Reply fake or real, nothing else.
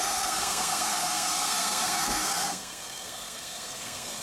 fake